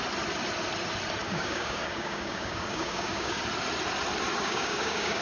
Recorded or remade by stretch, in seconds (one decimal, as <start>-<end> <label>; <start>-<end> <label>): 0.0-1.2 recorded; 1.2-3.4 remade; 3.4-4.3 recorded; 4.3-5.2 remade